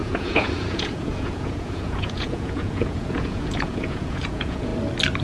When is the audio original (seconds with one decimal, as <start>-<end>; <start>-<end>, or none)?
4.7-5.2